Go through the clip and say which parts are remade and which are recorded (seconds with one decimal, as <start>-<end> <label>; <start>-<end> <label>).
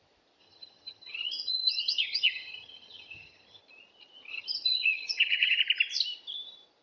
0.0-0.4 recorded; 0.4-3.6 remade; 3.6-4.3 recorded; 4.3-5.6 remade; 5.6-6.8 recorded